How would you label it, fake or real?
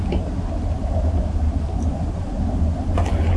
real